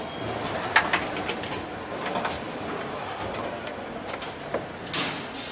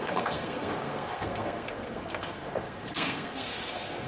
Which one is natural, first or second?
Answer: first